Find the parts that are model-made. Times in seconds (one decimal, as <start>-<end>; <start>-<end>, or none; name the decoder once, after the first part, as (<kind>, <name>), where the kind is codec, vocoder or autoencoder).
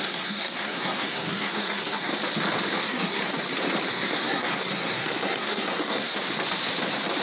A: 0.0-2.1 (codec, SNAC); 2.8-3.2; 3.9-6.1